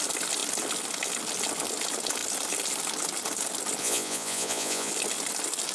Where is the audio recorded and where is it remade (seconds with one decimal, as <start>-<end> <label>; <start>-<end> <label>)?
0.0-3.8 recorded; 3.8-4.9 remade; 4.9-5.7 recorded